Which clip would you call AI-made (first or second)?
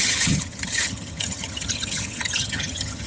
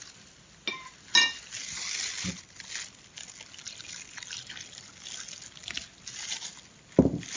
first